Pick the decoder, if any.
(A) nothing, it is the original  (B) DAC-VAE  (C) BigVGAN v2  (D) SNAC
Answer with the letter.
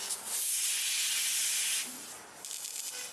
A